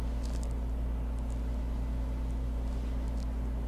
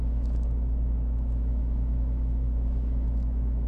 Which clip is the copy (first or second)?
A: second